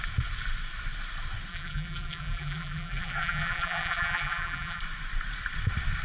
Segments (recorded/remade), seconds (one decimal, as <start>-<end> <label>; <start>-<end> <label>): 0.0-1.5 recorded; 1.5-4.8 remade; 4.8-6.0 recorded